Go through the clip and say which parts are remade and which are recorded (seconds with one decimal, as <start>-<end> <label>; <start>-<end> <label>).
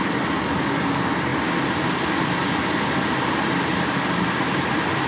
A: 0.0-5.1 recorded